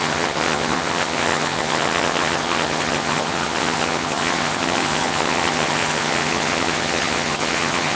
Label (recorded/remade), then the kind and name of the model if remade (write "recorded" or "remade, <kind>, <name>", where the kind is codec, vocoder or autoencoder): remade, vocoder, HiFi-GAN